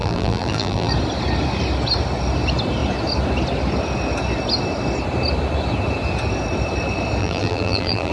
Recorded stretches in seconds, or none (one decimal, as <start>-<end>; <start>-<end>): 0.9-7.2